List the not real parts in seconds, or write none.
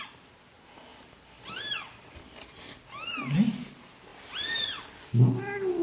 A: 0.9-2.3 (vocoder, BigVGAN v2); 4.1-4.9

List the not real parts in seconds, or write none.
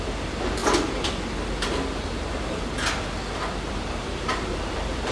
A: 0.0-0.6 (vocoder, BigVGAN v2); 3.7-5.1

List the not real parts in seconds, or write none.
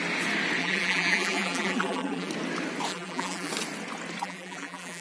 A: 0.6-2.3 (vocoder, BigVGAN v2); 2.9-3.5; 4.2-5.0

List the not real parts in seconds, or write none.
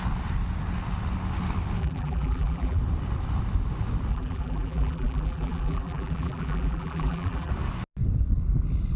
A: 1.8-2.8 (vocoder, BigVGAN v2); 4.1-7.5